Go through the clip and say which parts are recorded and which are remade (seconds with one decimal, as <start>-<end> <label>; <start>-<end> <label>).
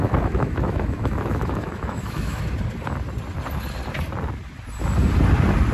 0.0-2.4 remade; 2.4-5.7 recorded